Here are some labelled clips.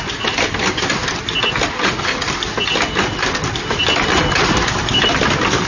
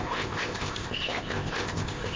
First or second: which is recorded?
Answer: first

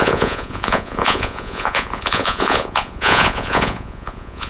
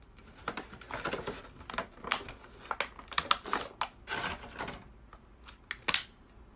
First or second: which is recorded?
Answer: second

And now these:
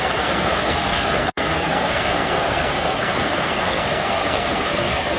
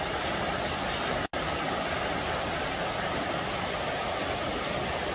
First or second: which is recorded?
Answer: second